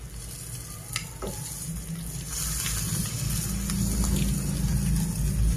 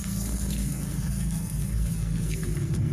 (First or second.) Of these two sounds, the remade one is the second